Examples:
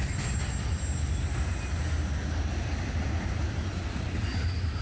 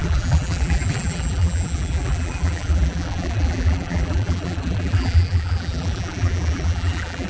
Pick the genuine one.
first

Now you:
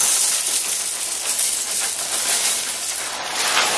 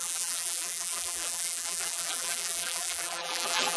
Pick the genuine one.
first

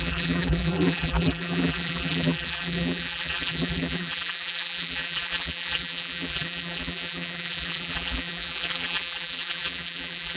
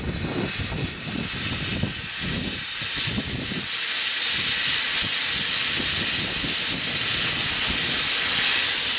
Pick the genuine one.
second